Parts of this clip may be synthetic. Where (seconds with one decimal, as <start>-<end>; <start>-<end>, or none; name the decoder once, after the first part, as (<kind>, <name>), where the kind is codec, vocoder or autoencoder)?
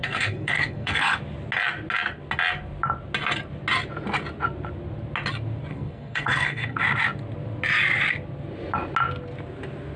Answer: 0.0-1.2 (codec, SNAC); 5.7-6.8